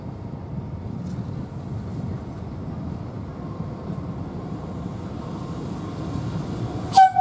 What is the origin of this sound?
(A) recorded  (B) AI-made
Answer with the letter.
A